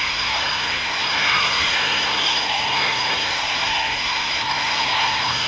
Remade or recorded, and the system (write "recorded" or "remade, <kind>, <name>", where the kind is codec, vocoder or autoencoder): remade, codec, SNAC